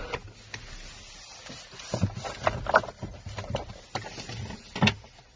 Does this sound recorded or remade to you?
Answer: recorded